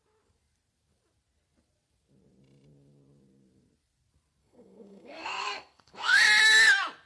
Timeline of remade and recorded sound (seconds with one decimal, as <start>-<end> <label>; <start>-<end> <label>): 0.0-4.4 recorded; 4.4-6.2 remade; 6.2-7.1 recorded